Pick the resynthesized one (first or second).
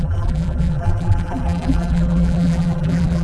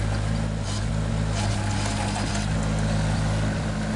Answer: first